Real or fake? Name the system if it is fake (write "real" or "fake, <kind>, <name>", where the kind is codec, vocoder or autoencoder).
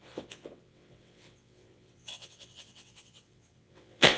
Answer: fake, vocoder, WaveNeXt